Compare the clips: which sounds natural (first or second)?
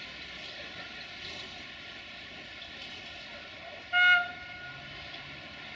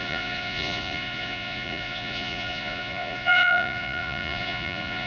first